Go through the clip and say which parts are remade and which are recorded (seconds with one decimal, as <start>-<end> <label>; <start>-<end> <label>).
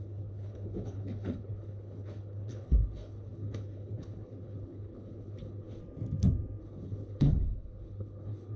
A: 0.0-5.8 remade; 5.8-6.6 recorded; 6.6-8.6 remade